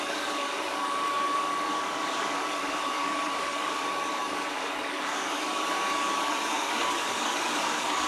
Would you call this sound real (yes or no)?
no